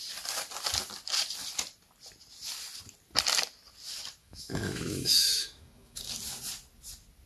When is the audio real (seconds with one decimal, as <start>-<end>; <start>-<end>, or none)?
0.0-4.2; 6.0-7.3